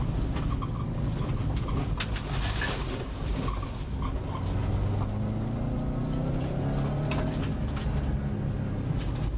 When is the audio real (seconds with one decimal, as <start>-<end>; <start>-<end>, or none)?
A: 0.0-9.4